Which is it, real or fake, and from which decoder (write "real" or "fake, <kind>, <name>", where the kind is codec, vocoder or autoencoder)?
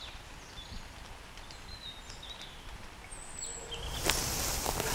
real